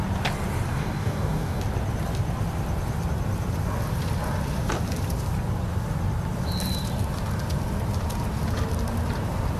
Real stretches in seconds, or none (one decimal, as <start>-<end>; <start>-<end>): 0.0-0.7; 1.6-9.6